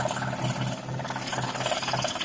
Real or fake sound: real